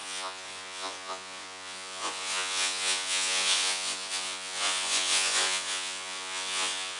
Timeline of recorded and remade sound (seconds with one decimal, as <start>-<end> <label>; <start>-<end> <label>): 0.0-7.0 remade

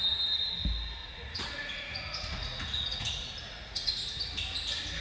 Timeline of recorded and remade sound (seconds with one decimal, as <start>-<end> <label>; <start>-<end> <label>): 0.0-1.0 recorded; 1.0-3.9 remade; 3.9-5.0 recorded

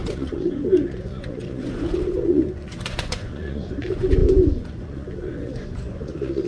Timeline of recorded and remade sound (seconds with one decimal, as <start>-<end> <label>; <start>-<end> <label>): 0.0-6.5 remade

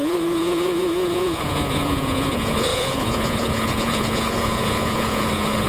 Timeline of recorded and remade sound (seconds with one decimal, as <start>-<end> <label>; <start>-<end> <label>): 0.0-5.7 remade

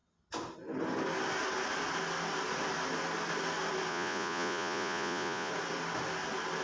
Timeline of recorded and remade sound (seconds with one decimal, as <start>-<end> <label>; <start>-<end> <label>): 0.0-3.9 recorded; 3.9-5.5 remade; 5.5-6.6 recorded

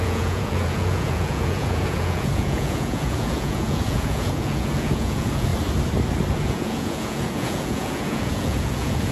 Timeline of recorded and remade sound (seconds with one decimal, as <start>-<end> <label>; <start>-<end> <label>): 0.0-5.5 remade; 5.5-6.3 recorded; 6.3-9.1 remade

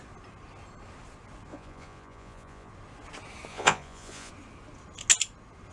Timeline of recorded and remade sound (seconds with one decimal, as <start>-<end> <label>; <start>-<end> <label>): 0.0-1.5 recorded; 1.5-2.7 remade; 2.7-3.5 recorded; 3.5-4.3 remade; 4.3-5.7 recorded

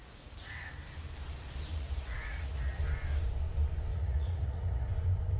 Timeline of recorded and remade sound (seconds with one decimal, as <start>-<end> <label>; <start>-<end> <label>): 0.0-0.6 remade; 0.6-1.7 recorded; 1.7-2.8 remade; 2.8-3.9 recorded; 3.9-4.9 remade; 4.9-5.4 recorded